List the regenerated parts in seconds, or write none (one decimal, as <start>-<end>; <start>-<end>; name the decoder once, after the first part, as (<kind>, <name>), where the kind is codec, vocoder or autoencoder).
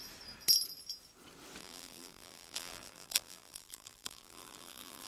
1.6-5.1 (vocoder, BigVGAN v2)